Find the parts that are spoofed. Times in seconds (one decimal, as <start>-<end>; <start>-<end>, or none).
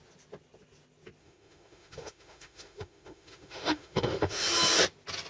1.2-4.4